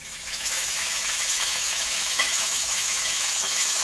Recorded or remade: remade